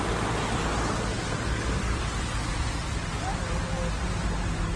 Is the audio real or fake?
real